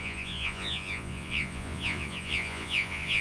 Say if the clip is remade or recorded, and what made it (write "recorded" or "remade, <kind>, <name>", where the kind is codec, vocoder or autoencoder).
remade, vocoder, Vocos